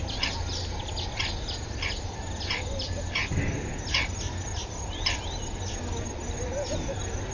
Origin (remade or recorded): recorded